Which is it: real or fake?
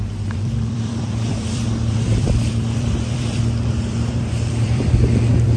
fake